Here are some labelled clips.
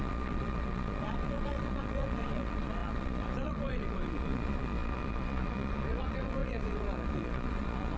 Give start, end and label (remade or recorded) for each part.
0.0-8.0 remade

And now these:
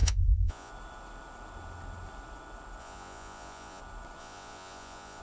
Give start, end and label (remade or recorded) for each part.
0.0-0.7 remade; 0.7-2.8 recorded; 2.8-3.8 remade; 3.8-4.2 recorded; 4.2-5.2 remade